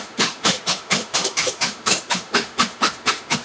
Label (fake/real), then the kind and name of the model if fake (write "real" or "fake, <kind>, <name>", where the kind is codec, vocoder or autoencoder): fake, autoencoder, DAC-VAE